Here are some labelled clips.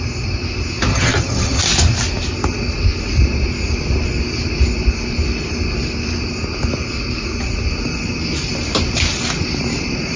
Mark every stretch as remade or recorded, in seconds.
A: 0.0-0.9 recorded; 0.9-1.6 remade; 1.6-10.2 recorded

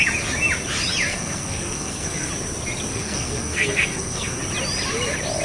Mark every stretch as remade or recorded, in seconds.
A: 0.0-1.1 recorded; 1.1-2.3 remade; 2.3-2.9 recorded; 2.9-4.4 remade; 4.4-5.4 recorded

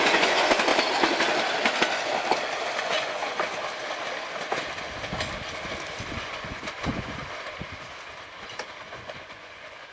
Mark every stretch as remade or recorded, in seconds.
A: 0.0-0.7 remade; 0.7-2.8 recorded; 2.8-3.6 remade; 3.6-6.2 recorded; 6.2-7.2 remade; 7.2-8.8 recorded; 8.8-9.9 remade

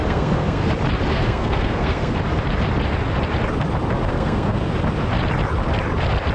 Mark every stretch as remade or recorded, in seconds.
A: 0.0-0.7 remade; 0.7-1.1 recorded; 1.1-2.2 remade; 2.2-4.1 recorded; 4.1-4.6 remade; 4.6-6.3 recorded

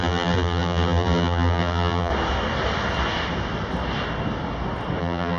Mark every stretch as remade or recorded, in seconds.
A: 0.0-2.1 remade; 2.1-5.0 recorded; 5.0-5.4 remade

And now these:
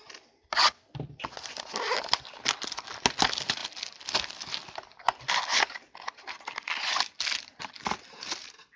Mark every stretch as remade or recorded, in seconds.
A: 0.0-8.8 recorded

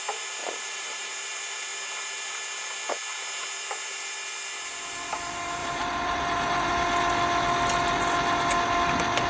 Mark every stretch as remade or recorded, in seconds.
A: 0.0-0.4 recorded; 0.4-1.1 remade; 1.1-5.6 recorded; 5.6-6.7 remade; 6.7-9.3 recorded

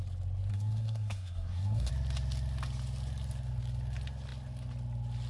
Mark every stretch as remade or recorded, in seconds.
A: 0.0-0.5 recorded; 0.5-1.9 remade; 1.9-5.3 recorded